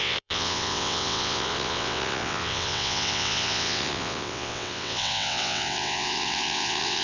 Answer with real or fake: fake